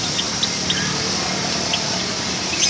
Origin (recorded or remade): recorded